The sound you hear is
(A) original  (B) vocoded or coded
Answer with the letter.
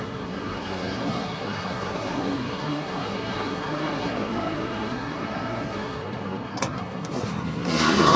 B